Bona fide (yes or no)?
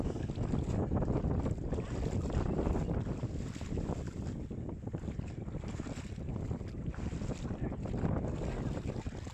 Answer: yes